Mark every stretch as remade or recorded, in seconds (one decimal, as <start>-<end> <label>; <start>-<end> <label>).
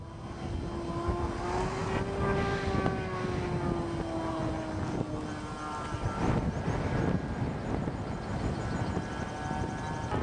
0.0-10.2 recorded